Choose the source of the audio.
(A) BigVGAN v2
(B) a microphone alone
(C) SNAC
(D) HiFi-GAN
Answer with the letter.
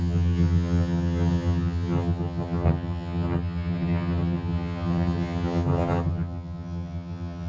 D